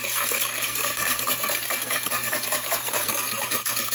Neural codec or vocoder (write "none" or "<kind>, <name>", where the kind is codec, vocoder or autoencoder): codec, SNAC